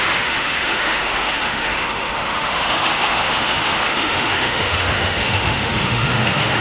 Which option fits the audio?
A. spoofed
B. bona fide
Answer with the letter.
A